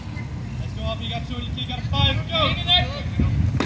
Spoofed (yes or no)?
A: no